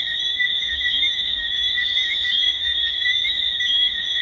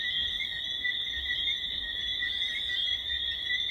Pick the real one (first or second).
second